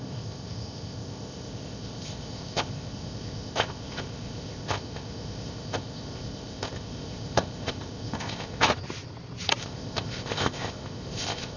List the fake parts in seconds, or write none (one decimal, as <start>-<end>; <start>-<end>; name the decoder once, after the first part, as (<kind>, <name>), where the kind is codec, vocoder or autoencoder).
0.0-8.7 (codec, ZipCodec); 9.6-11.6